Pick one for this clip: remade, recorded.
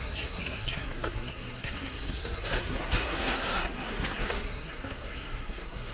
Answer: remade